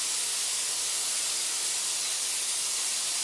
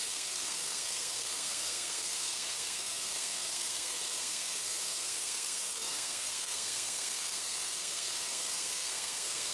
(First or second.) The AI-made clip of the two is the second